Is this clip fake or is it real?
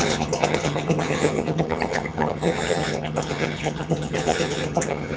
fake